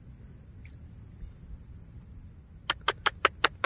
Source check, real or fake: real